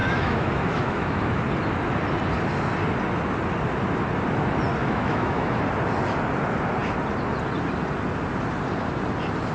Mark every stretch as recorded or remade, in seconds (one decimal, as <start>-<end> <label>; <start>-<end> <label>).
0.0-1.4 remade; 1.4-4.8 recorded; 4.8-5.6 remade; 5.6-9.5 recorded